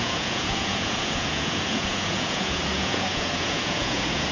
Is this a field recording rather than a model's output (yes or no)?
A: no